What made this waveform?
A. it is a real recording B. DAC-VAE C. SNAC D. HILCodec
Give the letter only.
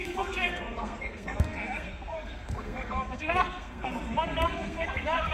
C